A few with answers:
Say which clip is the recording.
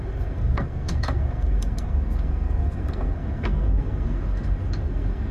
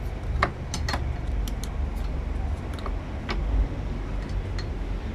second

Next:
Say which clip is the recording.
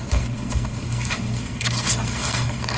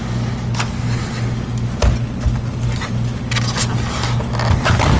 second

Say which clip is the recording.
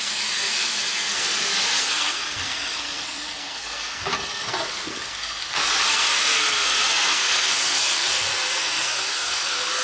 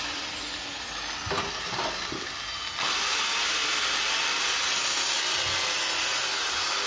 second